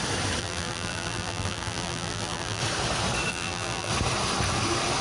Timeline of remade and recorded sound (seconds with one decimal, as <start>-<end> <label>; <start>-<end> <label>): 0.0-0.4 recorded; 0.4-2.6 remade; 2.6-3.3 recorded; 3.3-3.9 remade; 3.9-5.0 recorded